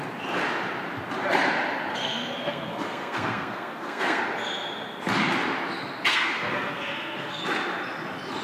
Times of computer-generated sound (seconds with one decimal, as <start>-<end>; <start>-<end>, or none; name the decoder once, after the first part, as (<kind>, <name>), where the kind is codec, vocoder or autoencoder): 1.9-4.2 (codec, SNAC); 6.1-7.4